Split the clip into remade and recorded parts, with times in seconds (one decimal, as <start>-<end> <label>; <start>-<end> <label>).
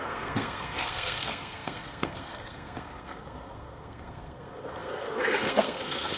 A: 0.0-6.2 remade